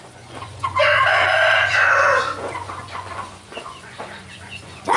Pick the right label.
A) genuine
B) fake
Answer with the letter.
B